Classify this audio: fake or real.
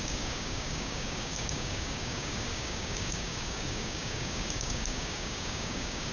fake